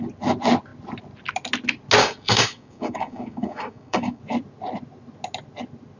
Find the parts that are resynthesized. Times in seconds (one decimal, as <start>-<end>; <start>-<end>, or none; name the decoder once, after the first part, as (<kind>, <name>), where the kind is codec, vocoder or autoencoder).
2.0-4.2 (codec, DAC)